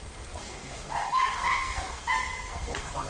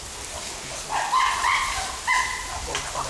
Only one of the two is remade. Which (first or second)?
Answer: first